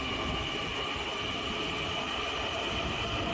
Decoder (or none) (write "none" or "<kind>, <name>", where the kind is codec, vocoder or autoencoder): none